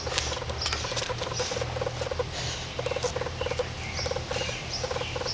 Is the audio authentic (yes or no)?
yes